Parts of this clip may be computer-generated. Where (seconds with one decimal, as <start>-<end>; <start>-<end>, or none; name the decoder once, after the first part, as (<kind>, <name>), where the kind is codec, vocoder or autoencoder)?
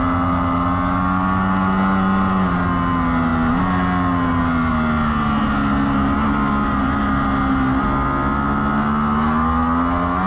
none